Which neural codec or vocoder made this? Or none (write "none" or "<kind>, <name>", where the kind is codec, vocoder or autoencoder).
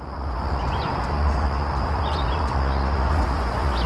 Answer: vocoder, Vocos